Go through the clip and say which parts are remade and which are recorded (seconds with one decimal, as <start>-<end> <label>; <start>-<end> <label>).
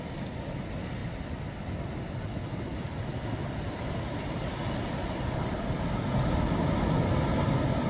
0.0-7.9 recorded